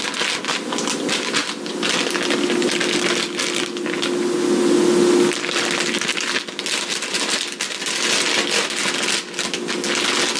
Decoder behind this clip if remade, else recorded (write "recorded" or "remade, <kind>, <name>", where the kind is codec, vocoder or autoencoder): recorded